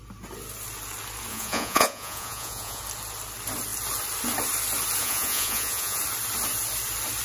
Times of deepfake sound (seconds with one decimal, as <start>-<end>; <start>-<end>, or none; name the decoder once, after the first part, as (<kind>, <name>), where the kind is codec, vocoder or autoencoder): 1.3-2.8 (vocoder, Vocos); 5.0-6.0